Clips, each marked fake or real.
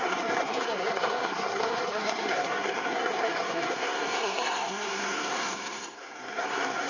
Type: fake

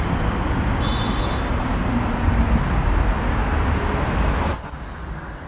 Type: real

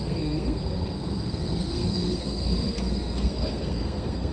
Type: fake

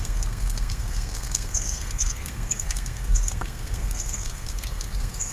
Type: fake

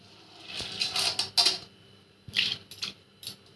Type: real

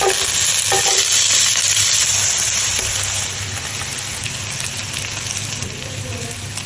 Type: real